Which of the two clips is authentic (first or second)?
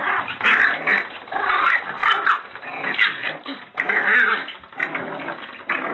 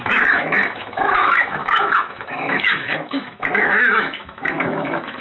first